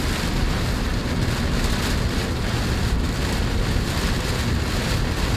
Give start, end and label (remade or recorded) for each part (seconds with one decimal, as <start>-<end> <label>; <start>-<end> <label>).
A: 0.0-5.4 recorded